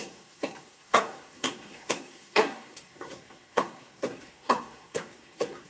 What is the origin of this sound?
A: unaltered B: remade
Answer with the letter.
B